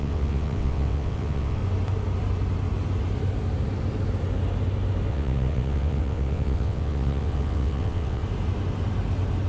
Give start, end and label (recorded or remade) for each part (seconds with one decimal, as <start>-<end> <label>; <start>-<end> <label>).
0.0-1.6 remade; 1.6-5.1 recorded; 5.1-8.2 remade; 8.2-9.5 recorded